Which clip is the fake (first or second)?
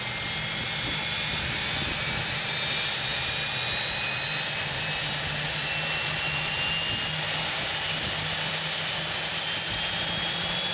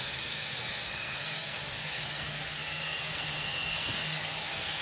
second